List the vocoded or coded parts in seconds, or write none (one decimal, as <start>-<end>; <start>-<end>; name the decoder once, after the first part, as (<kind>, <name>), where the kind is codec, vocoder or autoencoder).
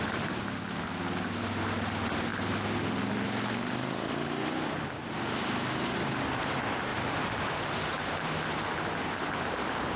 6.9-8.3 (vocoder, BigVGAN v2)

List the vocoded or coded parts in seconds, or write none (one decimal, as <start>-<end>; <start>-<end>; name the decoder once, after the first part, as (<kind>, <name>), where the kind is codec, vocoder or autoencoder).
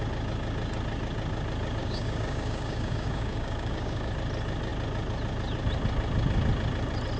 1.8-4.1 (codec, DAC)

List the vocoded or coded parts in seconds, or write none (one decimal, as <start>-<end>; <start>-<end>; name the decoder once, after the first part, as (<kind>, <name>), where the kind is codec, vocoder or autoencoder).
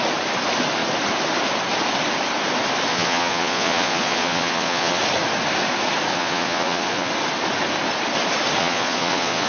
2.9-5.0 (vocoder, Vocos); 6.1-7.1; 8.6-9.5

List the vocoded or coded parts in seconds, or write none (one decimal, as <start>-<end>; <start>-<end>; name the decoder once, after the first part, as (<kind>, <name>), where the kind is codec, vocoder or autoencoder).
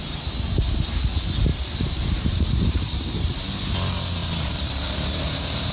1.5-3.4 (vocoder, BigVGAN v2); 4.2-5.7